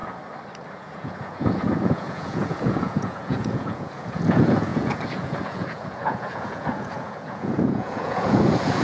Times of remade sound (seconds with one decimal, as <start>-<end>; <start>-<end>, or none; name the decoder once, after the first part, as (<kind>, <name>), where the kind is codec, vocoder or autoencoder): 0.7-8.8 (vocoder, Vocos)